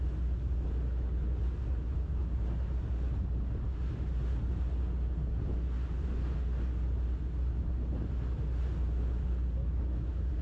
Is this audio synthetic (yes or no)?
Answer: no